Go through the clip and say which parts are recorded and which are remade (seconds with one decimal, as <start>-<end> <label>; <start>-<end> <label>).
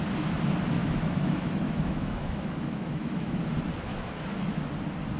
0.0-0.8 recorded; 0.8-3.4 remade; 3.4-3.9 recorded; 3.9-4.6 remade; 4.6-5.2 recorded